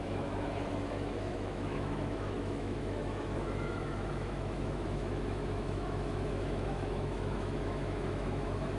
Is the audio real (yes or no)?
no